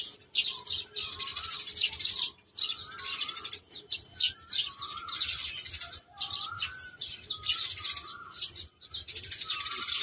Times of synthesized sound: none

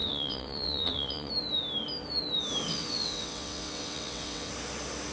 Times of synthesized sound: 0.0-1.3 (vocoder, WaveNeXt); 2.7-4.5

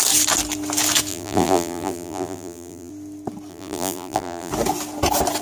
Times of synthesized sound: 1.1-2.9 (vocoder, BigVGAN v2); 3.5-4.5

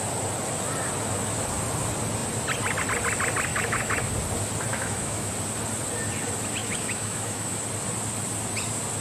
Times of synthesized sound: 3.5-4.1 (autoencoder, DAC-VAE); 4.7-5.3; 6.6-7.6

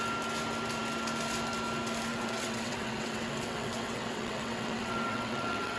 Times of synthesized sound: 2.1-5.8 (vocoder, WaveNeXt)

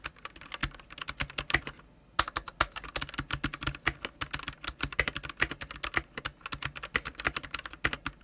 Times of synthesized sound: none

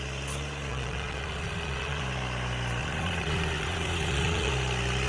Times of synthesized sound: 0.7-2.0 (vocoder, Vocos); 2.8-4.5

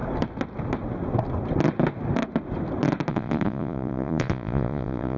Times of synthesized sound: 3.1-5.2 (vocoder, Vocos)